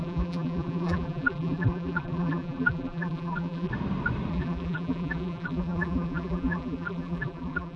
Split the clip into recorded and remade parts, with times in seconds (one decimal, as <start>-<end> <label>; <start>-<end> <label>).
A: 0.0-3.7 remade; 3.7-4.3 recorded; 4.3-7.8 remade